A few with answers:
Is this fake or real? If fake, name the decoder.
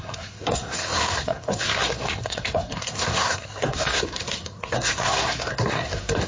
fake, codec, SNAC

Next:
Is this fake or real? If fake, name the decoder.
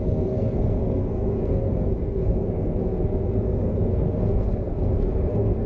fake, codec, SNAC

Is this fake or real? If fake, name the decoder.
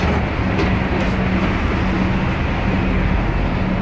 real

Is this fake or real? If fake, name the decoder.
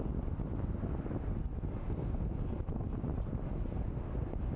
real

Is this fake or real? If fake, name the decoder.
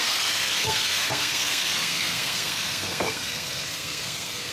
fake, codec, SNAC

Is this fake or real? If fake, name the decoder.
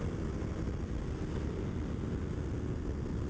real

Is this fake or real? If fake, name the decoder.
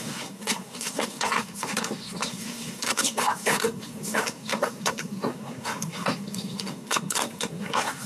fake, codec, SNAC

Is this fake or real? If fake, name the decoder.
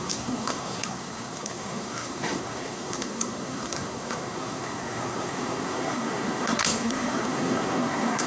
fake, codec, SNAC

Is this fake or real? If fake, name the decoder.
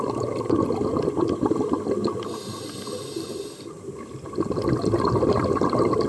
real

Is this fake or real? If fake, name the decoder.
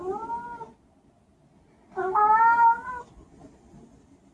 real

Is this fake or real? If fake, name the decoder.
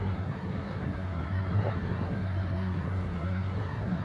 fake, codec, SNAC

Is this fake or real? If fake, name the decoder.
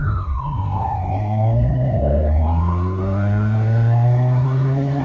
fake, codec, SNAC